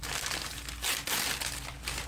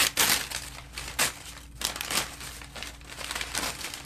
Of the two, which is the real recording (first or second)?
second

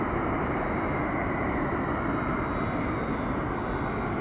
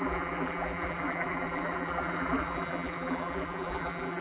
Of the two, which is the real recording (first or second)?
first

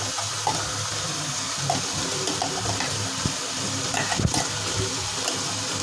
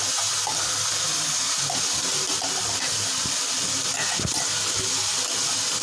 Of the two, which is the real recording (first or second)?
second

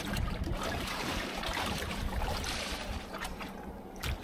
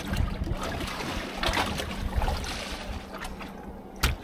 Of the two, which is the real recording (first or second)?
second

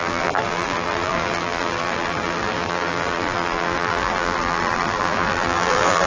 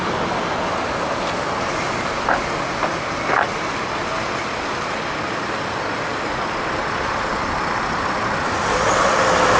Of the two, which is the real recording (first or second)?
second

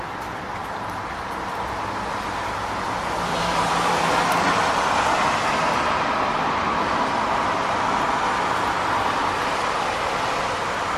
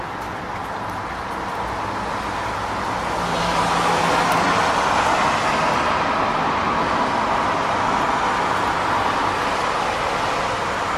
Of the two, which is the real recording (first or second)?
second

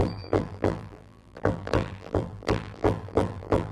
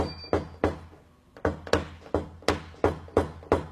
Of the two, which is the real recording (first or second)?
second